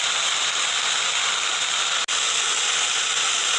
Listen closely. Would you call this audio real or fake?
real